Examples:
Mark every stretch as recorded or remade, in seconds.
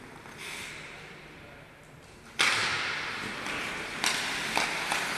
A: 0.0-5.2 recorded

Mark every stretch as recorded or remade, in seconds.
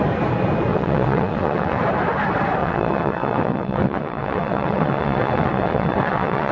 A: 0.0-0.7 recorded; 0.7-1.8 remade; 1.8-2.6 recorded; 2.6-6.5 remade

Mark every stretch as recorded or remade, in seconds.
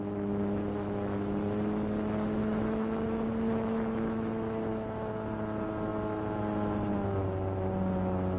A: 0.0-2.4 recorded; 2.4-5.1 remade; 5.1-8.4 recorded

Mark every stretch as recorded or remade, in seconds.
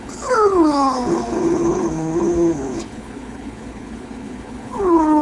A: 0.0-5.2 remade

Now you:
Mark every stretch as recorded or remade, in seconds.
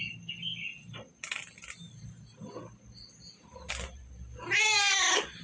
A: 0.0-5.4 recorded